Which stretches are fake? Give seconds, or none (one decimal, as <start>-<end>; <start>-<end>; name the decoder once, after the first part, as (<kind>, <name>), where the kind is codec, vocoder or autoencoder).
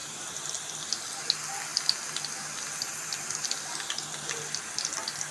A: none